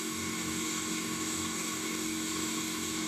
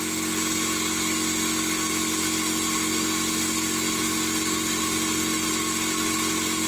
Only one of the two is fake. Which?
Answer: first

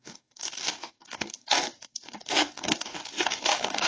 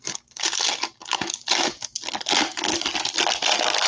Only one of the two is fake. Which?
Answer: first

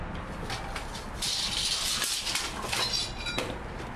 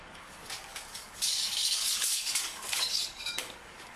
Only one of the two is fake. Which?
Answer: second